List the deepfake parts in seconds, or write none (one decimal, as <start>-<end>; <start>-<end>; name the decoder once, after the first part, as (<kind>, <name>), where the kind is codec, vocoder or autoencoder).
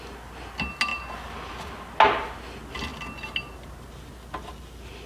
none